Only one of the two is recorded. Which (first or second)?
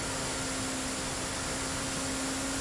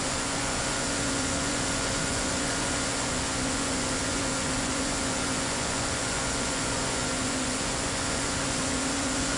first